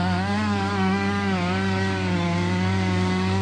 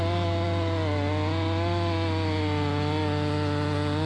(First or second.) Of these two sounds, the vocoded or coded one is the first